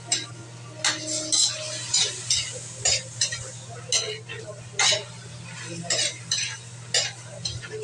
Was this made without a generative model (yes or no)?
yes